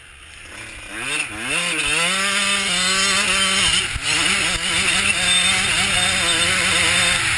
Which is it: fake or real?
real